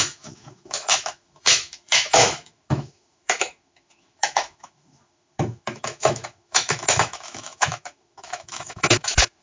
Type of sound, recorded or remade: remade